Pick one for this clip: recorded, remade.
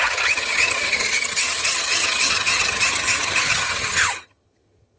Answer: remade